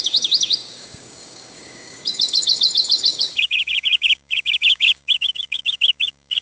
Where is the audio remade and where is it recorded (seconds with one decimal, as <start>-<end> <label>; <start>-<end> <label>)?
0.0-6.4 remade